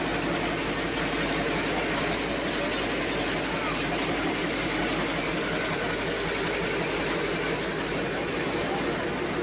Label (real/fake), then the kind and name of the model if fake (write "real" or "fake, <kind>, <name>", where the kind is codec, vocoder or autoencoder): real